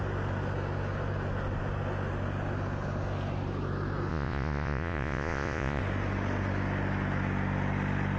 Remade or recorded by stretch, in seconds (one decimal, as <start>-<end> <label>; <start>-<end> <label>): 0.0-4.1 recorded; 4.1-5.8 remade; 5.8-8.2 recorded